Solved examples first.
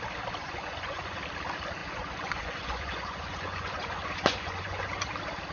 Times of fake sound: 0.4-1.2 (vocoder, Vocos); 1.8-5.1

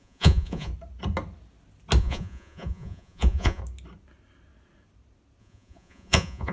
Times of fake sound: 0.0-0.7 (vocoder, Vocos); 2.0-3.6; 5.4-6.5